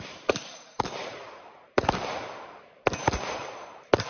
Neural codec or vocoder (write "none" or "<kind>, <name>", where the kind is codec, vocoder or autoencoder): vocoder, BigVGAN v2